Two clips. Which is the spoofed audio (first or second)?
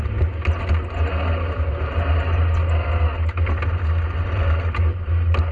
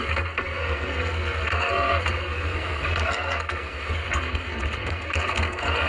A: second